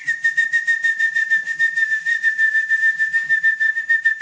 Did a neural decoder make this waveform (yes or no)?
yes